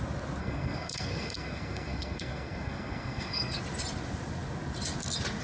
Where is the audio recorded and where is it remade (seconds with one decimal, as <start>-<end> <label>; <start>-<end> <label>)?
0.0-0.4 recorded; 0.4-3.6 remade; 3.6-5.4 recorded